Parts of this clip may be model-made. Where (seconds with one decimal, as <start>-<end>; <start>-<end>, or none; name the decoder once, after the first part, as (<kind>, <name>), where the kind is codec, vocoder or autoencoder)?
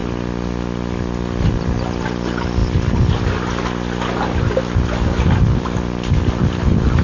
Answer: none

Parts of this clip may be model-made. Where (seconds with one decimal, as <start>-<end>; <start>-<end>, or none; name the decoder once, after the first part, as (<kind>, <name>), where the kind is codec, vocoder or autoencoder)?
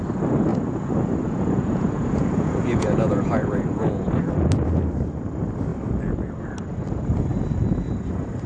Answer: 0.5-4.3 (vocoder, Vocos)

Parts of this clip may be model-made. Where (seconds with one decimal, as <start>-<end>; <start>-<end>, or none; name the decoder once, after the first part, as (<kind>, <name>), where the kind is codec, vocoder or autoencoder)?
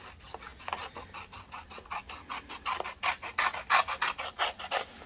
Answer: none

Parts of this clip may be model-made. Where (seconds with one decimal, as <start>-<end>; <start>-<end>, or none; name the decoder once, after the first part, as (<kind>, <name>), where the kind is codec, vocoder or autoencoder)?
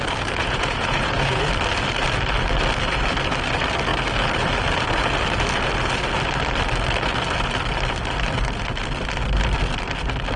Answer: 0.4-1.4 (vocoder, Vocos)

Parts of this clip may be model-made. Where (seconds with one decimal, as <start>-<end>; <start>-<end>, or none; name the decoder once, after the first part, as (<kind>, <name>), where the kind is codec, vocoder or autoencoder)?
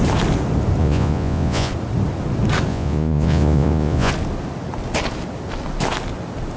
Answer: 0.8-1.7 (vocoder, Vocos); 2.7-4.1